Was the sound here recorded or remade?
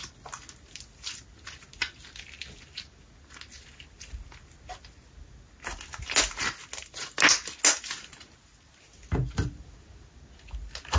recorded